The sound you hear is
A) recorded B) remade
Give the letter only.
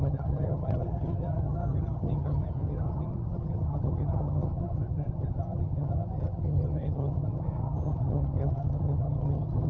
B